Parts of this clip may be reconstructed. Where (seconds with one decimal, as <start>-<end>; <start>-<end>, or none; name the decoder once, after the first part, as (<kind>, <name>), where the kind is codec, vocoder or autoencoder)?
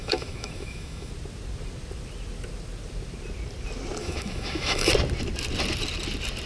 0.0-1.1 (autoencoder, DAC-VAE); 4.0-4.9